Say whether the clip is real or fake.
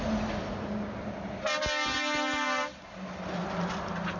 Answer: real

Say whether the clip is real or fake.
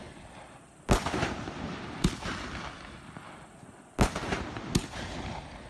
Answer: real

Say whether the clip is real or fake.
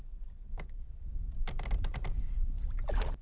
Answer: real